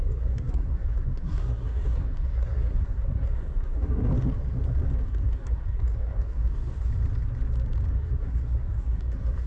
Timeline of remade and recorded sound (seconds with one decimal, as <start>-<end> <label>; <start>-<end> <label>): 0.0-4.1 remade; 4.1-5.1 recorded; 5.1-6.9 remade; 6.9-7.9 recorded; 7.9-9.5 remade